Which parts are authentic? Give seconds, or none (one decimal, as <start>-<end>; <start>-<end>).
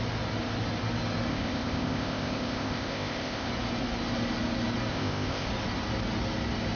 0.0-1.3; 3.5-4.9; 5.5-6.8